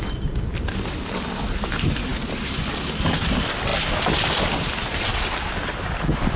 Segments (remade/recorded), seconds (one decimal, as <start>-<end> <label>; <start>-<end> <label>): 0.0-6.4 recorded

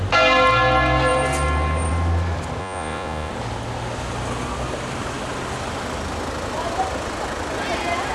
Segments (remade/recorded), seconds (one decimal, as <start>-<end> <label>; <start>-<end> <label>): 0.0-2.6 recorded; 2.6-3.3 remade; 3.3-8.1 recorded

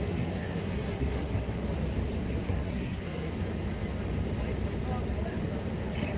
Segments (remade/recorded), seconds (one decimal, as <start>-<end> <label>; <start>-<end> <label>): 0.0-1.6 remade; 1.6-2.2 recorded; 2.2-3.3 remade; 3.3-6.2 recorded